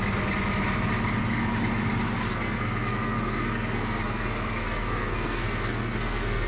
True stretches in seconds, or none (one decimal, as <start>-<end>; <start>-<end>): 0.0-2.3